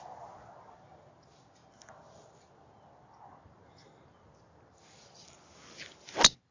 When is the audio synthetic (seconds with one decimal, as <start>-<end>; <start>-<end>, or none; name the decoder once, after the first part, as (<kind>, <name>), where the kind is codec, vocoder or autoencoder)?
none